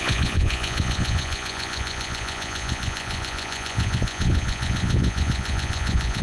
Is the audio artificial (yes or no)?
yes